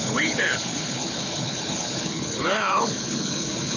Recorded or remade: remade